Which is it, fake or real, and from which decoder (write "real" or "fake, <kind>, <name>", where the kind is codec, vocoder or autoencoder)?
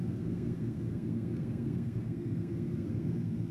fake, codec, SNAC